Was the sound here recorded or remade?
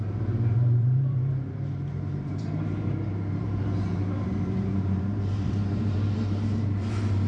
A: remade